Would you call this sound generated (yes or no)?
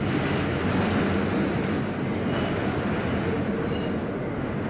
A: no